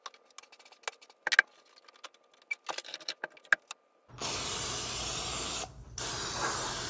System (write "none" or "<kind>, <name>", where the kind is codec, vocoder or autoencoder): none